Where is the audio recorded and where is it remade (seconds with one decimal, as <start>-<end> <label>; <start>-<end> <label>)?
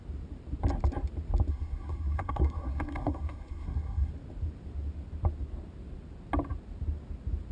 0.0-1.5 recorded; 1.5-4.1 remade; 4.1-7.5 recorded